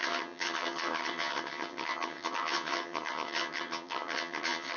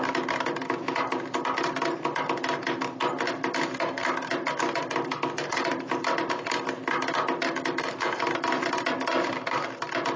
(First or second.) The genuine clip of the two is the second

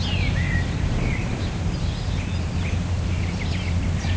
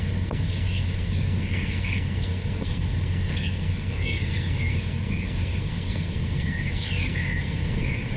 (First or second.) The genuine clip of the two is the first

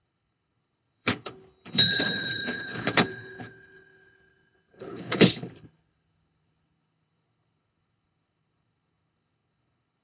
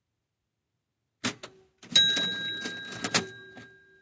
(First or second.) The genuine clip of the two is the second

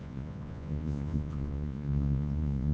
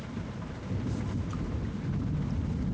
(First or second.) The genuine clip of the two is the second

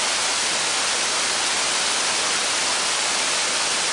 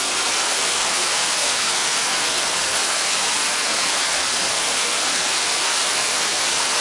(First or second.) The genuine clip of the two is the first